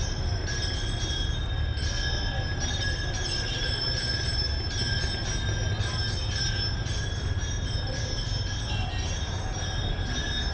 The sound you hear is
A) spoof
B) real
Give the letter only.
B